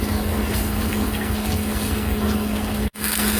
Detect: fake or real fake